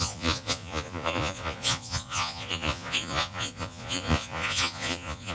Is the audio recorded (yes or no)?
no